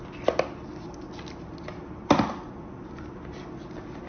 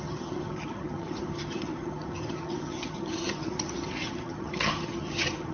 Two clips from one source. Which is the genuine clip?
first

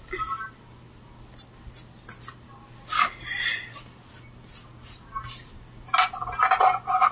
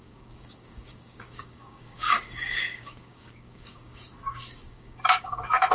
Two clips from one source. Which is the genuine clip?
first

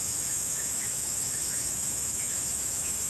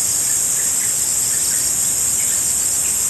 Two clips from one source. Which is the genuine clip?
second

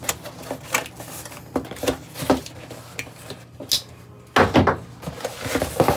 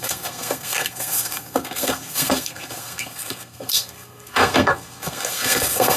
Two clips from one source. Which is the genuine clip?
first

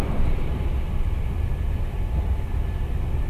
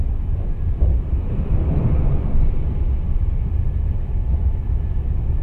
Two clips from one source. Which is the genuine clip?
first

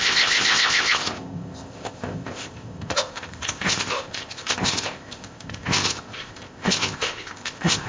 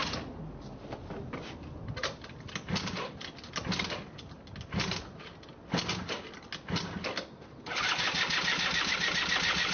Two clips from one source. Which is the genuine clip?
second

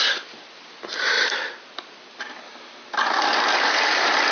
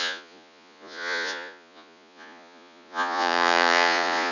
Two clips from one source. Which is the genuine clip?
first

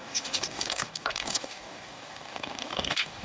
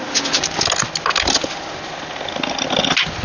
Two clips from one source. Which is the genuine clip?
second